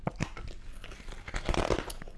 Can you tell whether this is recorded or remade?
recorded